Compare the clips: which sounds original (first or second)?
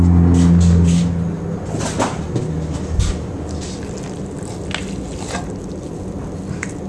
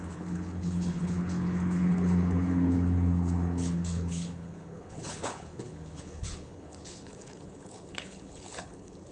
first